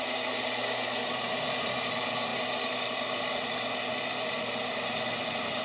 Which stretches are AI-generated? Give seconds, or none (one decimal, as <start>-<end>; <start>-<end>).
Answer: none